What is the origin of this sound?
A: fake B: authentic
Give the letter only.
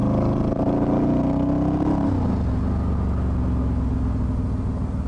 B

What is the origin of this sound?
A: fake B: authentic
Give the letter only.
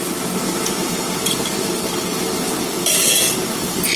B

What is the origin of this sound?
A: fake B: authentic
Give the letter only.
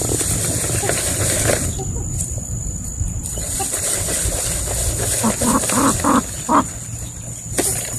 B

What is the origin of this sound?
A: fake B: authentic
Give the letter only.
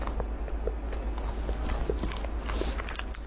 B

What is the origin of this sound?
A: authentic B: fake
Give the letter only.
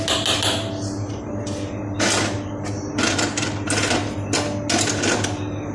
A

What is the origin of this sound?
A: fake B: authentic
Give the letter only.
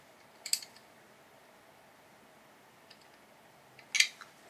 B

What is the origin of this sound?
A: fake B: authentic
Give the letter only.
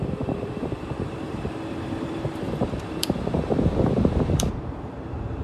A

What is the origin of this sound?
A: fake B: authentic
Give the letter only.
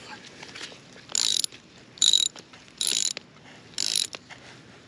B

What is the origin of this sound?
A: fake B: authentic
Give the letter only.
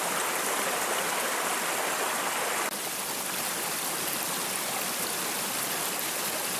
B